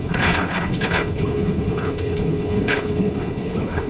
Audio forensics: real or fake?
fake